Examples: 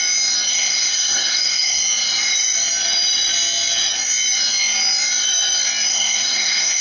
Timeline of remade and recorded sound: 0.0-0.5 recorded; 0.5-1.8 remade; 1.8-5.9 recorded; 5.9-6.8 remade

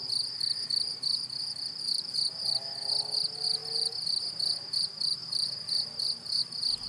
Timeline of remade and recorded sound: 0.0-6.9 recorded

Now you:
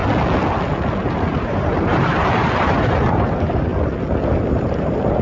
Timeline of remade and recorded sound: 0.0-1.3 recorded; 1.3-3.7 remade; 3.7-4.5 recorded; 4.5-5.2 remade

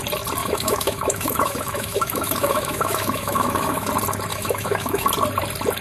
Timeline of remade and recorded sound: 0.0-0.4 recorded; 0.4-3.9 remade; 3.9-4.3 recorded; 4.3-5.1 remade; 5.1-5.8 recorded

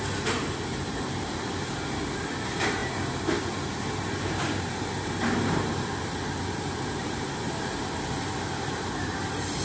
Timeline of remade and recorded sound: 0.0-9.6 remade